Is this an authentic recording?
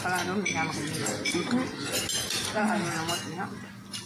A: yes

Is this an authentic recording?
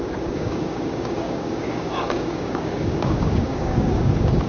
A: no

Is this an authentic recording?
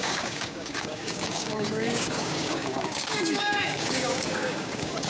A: no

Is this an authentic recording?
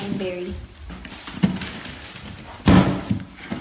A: yes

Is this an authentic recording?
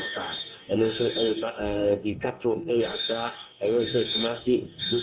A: no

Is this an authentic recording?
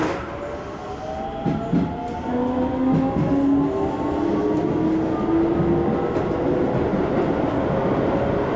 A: yes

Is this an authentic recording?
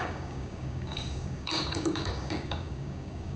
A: no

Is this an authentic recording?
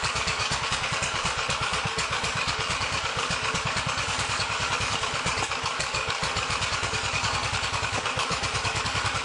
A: no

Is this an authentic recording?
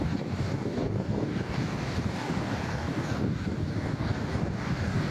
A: no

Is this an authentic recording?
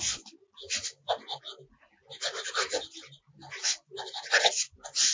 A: yes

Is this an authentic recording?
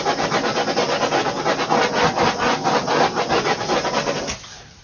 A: yes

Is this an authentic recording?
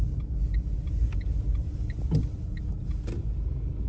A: yes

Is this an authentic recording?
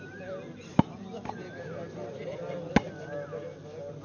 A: yes